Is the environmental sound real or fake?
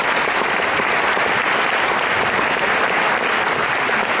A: real